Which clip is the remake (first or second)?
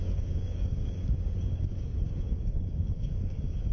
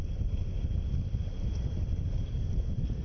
first